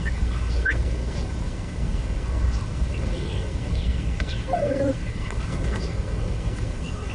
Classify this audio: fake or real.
fake